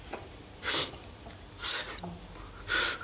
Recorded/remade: recorded